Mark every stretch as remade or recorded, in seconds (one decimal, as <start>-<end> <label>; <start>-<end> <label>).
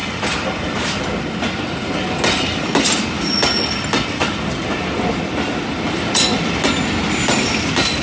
0.0-8.0 recorded